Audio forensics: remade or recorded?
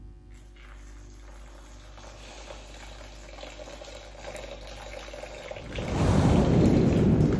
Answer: recorded